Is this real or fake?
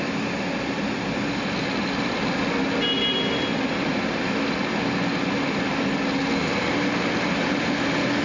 real